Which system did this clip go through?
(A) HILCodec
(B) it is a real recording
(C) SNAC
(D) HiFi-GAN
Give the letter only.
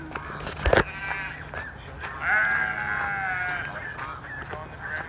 B